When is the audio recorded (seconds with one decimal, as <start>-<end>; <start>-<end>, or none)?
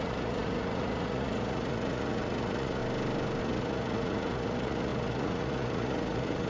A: 2.8-3.4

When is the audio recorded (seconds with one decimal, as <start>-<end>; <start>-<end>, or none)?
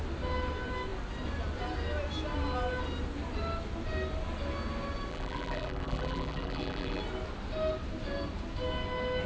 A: 0.0-5.1; 7.0-9.3